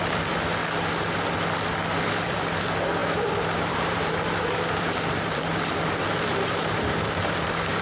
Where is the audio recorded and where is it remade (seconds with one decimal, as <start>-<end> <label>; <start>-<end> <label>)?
0.0-0.6 remade; 0.6-2.1 recorded; 2.1-7.8 remade